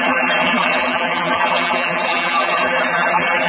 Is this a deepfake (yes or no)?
yes